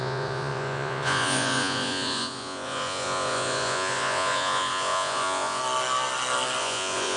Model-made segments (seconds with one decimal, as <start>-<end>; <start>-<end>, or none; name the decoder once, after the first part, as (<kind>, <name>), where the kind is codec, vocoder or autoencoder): 0.0-5.6 (vocoder, Vocos); 6.6-7.2